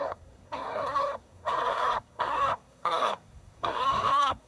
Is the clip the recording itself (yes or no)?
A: no